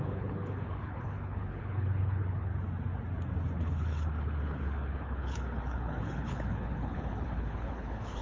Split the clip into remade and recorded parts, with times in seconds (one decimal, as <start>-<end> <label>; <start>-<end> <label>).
0.0-2.5 remade; 2.5-3.6 recorded; 3.6-8.2 remade